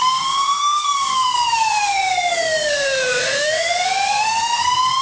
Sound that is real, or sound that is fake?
fake